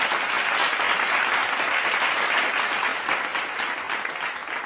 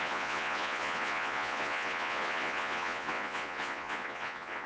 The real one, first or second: first